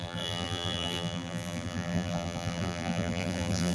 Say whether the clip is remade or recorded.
remade